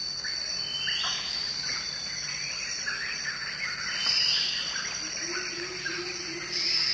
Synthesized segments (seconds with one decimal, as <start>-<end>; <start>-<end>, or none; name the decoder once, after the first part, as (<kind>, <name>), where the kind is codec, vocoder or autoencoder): 4.0-6.2 (vocoder, BigVGAN v2)